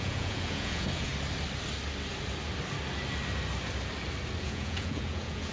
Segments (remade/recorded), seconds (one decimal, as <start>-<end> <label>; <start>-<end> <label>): 0.0-1.1 remade; 1.1-4.4 recorded; 4.4-5.5 remade